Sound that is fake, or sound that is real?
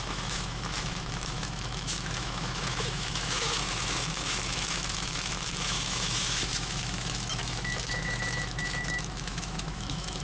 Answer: fake